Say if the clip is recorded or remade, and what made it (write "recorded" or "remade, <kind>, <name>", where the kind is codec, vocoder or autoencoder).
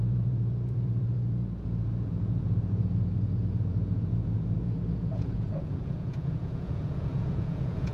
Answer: remade, vocoder, Vocos